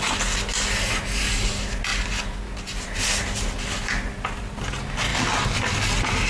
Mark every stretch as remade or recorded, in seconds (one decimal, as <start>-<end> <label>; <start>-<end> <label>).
0.0-6.3 recorded